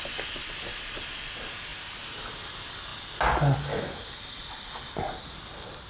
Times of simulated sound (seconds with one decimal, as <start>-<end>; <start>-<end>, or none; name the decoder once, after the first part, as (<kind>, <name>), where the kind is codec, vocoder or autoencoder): none